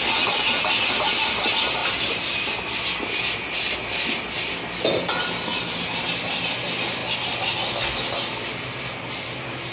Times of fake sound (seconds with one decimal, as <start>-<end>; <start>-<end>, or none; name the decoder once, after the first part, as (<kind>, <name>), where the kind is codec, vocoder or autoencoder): 1.8-2.6 (vocoder, BigVGAN v2); 5.5-6.0